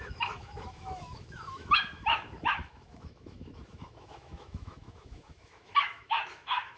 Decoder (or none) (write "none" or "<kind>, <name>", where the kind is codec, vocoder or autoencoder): autoencoder, DAC-VAE